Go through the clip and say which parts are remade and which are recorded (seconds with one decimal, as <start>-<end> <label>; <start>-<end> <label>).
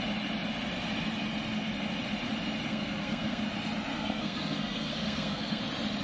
0.0-2.7 recorded; 2.7-3.4 remade; 3.4-3.9 recorded; 3.9-5.6 remade; 5.6-6.0 recorded